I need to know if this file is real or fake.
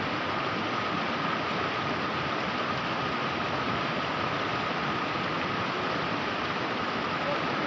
real